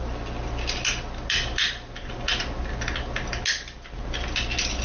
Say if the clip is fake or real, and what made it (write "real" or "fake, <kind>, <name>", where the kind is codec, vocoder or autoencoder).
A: real